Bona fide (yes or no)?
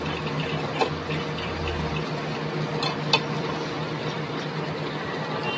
yes